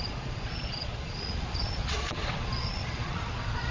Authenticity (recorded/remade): remade